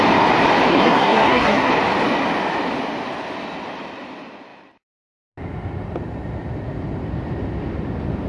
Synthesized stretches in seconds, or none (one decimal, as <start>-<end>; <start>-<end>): 0.7-1.7